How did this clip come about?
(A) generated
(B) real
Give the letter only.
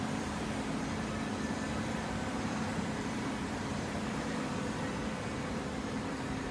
A